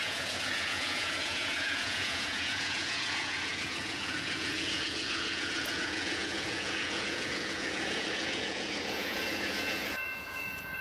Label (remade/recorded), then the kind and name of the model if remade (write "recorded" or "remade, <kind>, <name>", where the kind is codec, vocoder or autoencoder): remade, vocoder, Vocos